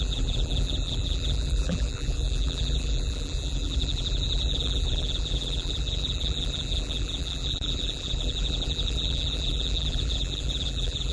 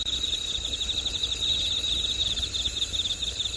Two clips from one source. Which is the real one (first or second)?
second